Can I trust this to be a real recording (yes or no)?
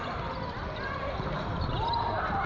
yes